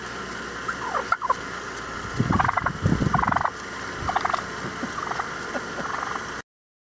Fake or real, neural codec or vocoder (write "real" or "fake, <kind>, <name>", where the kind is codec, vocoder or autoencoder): real